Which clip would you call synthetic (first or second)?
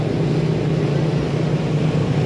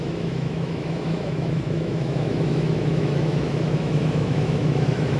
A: second